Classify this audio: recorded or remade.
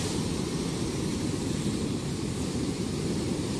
recorded